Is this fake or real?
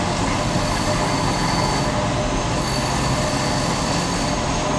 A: real